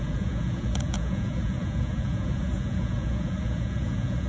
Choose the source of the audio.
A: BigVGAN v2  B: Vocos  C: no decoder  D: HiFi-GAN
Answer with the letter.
B